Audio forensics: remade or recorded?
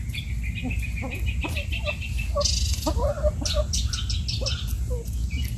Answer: recorded